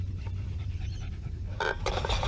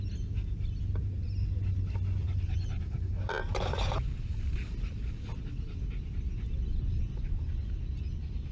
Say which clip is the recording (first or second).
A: second